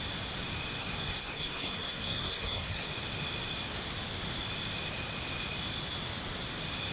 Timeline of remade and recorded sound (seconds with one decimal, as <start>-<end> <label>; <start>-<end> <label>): 0.0-0.8 recorded; 0.8-2.9 remade; 2.9-6.9 recorded